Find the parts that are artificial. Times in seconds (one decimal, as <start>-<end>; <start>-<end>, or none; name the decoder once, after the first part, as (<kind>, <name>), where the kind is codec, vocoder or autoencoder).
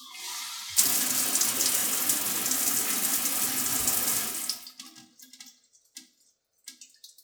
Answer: none